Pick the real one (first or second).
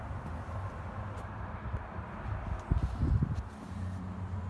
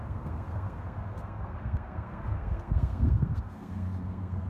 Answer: first